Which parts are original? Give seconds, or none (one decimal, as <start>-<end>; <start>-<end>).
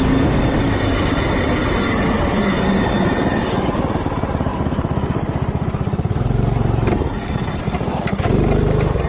0.0-4.5; 8.0-9.1